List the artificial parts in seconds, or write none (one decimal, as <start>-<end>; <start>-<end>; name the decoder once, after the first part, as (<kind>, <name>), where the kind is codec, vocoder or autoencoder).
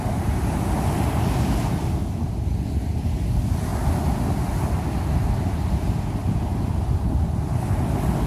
none